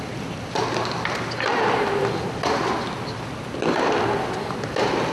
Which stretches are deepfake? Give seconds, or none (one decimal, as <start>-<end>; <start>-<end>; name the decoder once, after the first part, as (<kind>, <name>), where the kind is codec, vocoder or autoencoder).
none